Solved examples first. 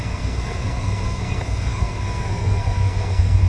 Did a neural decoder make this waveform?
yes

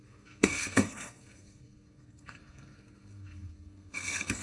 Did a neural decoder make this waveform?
yes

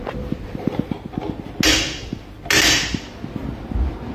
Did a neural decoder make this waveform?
no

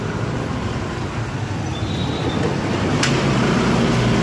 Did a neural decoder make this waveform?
no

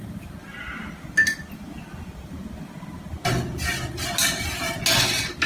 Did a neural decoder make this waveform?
no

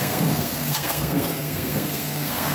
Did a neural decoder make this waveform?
yes